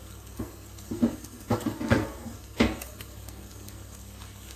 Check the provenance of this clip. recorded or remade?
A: remade